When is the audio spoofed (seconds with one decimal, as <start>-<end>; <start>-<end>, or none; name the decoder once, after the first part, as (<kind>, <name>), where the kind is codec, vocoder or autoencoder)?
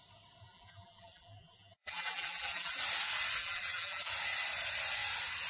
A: 0.4-2.8 (vocoder, BigVGAN v2); 3.4-4.1